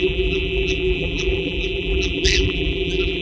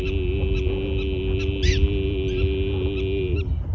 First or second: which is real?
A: second